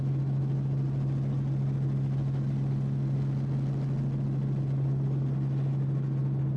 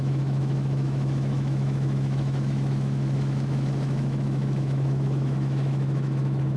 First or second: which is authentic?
first